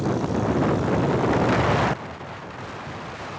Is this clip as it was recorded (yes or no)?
yes